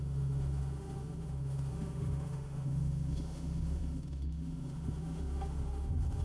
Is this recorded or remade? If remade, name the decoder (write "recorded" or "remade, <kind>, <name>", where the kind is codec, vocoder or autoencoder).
remade, autoencoder, DAC-VAE